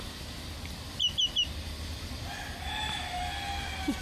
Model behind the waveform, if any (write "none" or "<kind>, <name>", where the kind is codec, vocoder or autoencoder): none